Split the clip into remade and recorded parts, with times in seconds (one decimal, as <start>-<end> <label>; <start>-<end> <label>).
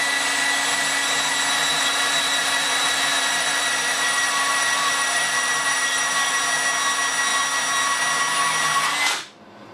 0.0-1.7 recorded; 1.7-6.4 remade; 6.4-9.7 recorded